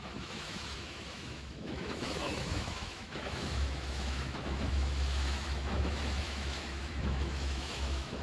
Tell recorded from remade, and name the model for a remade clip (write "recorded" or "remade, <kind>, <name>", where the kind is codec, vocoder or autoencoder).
remade, autoencoder, DAC-VAE